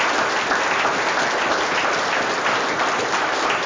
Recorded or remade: recorded